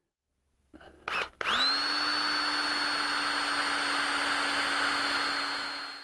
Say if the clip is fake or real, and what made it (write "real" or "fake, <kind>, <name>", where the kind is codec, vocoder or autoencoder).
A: real